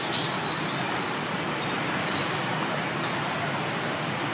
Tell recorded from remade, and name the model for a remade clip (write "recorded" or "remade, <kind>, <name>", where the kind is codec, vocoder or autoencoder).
recorded